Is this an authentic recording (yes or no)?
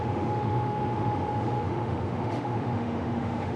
no